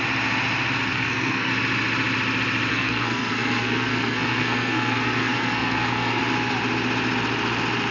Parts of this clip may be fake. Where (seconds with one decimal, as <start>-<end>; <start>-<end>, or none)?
0.9-1.5; 2.7-6.2